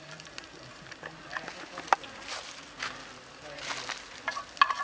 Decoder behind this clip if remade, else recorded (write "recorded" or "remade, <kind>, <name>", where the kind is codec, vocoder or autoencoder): recorded